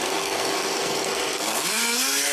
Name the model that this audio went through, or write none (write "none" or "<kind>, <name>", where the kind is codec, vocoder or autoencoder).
codec, SNAC